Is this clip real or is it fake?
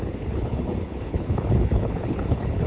fake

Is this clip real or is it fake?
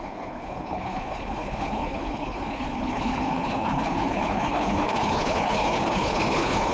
fake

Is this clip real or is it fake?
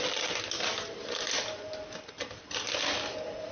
real